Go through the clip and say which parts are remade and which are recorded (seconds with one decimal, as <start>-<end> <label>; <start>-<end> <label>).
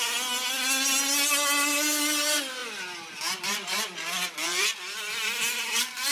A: 0.0-4.4 recorded; 4.4-6.1 remade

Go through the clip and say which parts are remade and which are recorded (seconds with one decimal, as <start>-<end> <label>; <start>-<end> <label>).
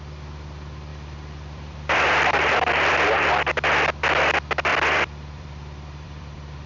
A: 0.0-0.9 recorded; 0.9-3.3 remade; 3.3-4.7 recorded; 4.7-6.7 remade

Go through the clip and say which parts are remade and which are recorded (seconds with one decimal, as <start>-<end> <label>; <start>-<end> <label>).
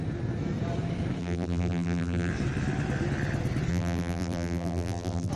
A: 0.0-1.2 recorded; 1.2-2.3 remade; 2.3-3.7 recorded; 3.7-5.3 remade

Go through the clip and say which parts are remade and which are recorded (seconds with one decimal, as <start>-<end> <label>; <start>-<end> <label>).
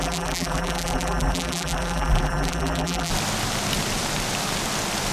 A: 0.0-3.1 remade; 3.1-5.1 recorded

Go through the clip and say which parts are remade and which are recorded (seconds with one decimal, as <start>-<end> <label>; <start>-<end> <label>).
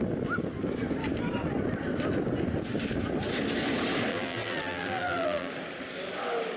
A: 0.0-4.1 recorded; 4.1-5.5 remade; 5.5-6.6 recorded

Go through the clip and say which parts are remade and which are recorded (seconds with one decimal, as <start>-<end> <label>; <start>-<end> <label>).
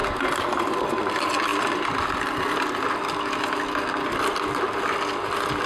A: 0.0-5.7 recorded